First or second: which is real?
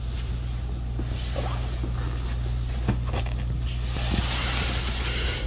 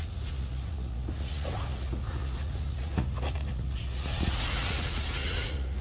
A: first